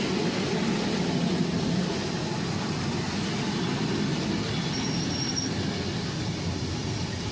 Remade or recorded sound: recorded